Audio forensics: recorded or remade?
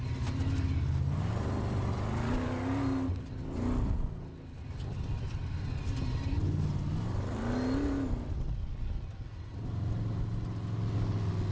recorded